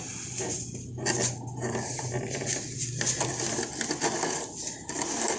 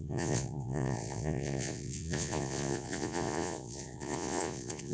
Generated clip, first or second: second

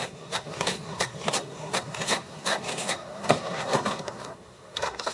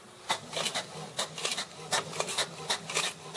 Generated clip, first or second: first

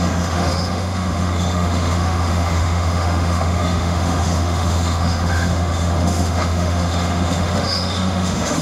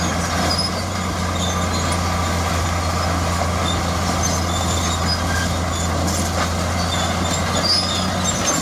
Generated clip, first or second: first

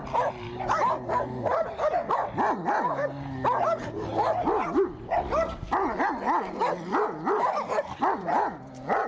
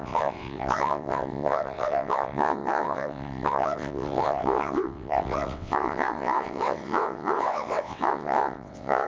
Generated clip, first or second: second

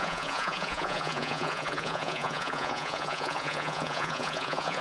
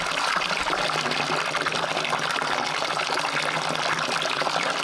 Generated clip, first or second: first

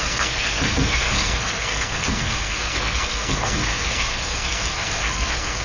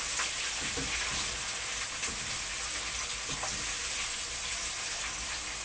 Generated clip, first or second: first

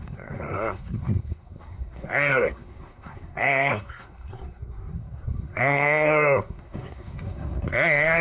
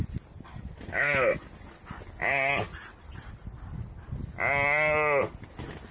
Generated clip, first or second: first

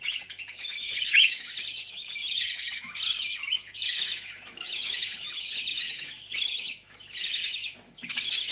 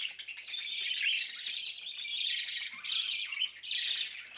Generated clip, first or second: first